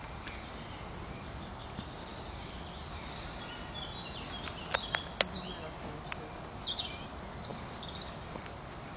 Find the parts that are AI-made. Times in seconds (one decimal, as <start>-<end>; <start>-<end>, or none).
none